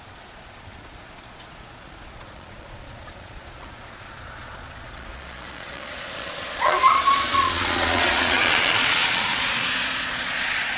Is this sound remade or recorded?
remade